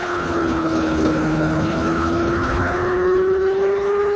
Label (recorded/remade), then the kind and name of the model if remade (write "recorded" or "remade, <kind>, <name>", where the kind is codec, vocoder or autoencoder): remade, codec, HILCodec